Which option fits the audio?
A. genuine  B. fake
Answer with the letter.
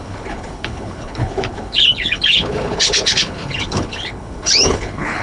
B